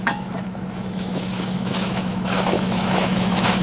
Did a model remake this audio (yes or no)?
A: yes